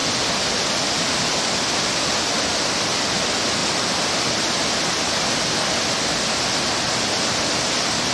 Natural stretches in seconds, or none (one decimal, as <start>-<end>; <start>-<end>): 1.2-3.6; 4.3-8.1